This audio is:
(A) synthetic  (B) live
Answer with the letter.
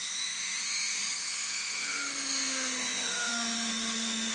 A